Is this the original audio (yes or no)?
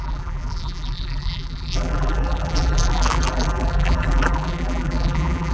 no